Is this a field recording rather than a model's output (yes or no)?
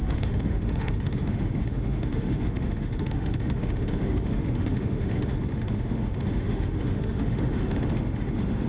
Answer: no